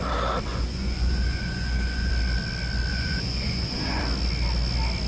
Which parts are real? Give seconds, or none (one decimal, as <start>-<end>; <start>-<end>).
0.0-0.5; 2.1-2.9; 4.0-5.1